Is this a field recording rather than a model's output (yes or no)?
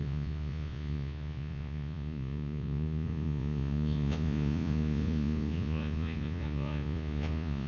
no